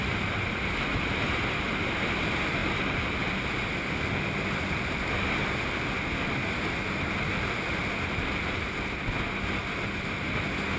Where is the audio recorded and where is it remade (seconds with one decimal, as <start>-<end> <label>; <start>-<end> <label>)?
0.0-10.8 recorded